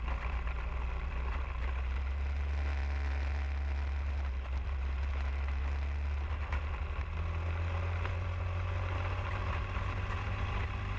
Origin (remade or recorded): recorded